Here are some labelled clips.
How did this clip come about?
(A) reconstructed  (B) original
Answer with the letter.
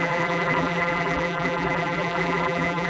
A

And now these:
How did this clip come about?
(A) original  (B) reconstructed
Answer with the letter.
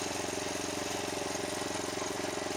A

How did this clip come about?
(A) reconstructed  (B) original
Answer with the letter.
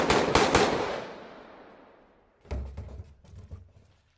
B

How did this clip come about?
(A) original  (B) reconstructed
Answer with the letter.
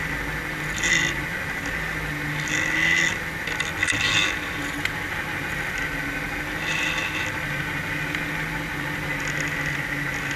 A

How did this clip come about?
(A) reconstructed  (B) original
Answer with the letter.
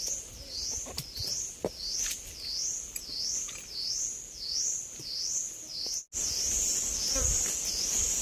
B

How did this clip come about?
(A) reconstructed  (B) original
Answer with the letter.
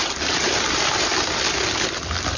B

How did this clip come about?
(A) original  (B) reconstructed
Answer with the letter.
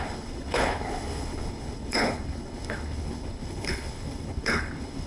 B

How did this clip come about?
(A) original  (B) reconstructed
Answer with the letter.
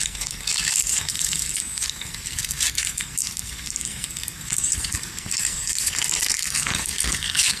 B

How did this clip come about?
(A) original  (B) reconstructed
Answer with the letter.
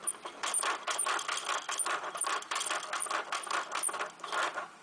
B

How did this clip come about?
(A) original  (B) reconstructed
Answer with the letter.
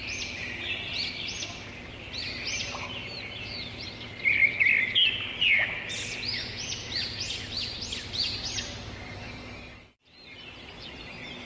A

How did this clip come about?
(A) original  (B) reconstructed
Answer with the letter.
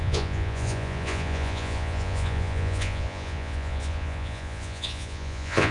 B